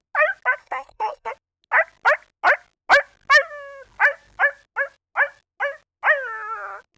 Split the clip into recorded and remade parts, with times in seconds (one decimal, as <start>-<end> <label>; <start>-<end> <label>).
0.0-0.6 recorded; 0.6-1.3 remade; 1.3-7.0 recorded